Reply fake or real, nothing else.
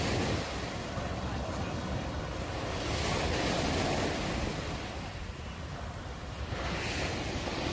real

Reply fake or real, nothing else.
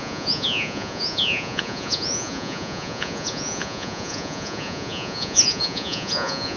fake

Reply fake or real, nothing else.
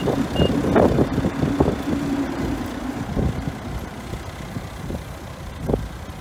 real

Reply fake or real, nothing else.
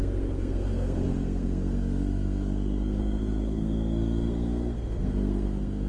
fake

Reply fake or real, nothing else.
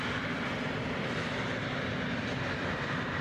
real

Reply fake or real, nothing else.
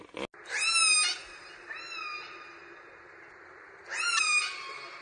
real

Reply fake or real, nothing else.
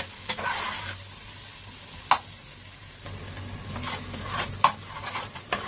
real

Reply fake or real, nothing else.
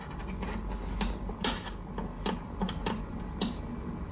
real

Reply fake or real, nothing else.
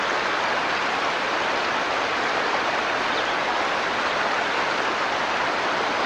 real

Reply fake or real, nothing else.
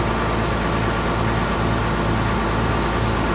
real